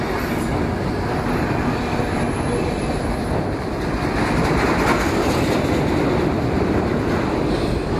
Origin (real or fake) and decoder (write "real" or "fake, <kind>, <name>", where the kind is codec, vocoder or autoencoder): real